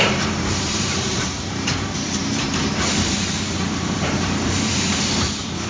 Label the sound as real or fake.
fake